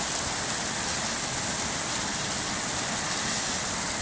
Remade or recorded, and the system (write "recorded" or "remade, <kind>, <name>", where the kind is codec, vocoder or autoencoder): recorded